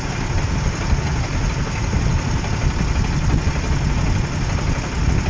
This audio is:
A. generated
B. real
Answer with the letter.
B